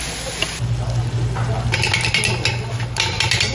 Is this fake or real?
real